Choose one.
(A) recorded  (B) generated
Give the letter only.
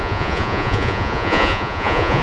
B